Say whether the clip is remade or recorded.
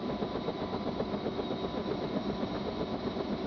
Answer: recorded